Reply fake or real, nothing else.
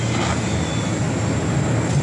real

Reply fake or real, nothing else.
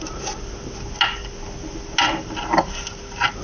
real